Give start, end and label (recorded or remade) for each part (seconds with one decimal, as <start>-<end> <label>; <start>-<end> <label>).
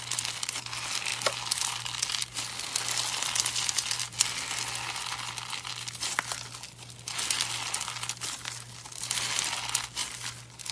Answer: 0.0-10.7 recorded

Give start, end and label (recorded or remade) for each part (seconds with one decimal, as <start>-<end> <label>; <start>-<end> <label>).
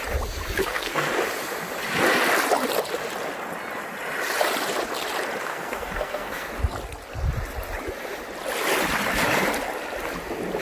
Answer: 0.0-0.6 recorded; 0.6-1.1 remade; 1.1-5.5 recorded; 5.5-6.5 remade; 6.5-10.6 recorded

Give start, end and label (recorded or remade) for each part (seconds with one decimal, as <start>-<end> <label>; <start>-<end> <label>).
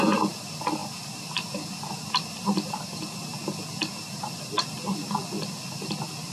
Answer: 0.0-6.3 recorded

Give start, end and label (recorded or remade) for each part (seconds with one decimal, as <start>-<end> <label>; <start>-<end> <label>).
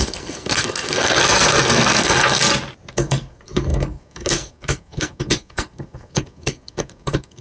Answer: 0.0-2.4 remade; 2.4-2.9 recorded; 2.9-7.4 remade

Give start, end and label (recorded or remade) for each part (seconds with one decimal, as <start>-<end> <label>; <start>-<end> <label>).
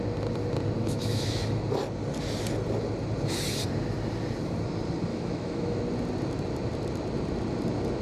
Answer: 0.0-0.8 recorded; 0.8-1.5 remade; 1.5-5.1 recorded; 5.1-5.8 remade; 5.8-8.0 recorded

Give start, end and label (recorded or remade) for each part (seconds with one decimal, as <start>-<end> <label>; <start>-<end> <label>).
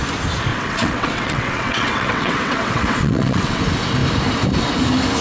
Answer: 0.0-0.5 recorded; 0.5-3.6 remade; 3.6-5.2 recorded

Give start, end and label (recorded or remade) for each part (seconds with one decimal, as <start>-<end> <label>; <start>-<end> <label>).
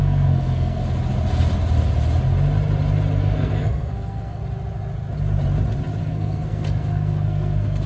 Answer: 0.0-0.8 remade; 0.8-3.2 recorded; 3.2-4.4 remade; 4.4-6.0 recorded; 6.0-7.9 remade